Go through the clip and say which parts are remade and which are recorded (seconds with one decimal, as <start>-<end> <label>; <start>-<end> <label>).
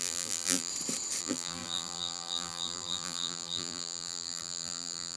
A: 0.0-0.7 remade; 0.7-1.2 recorded; 1.2-5.2 remade